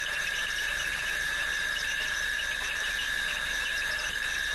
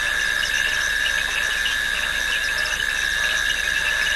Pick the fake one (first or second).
first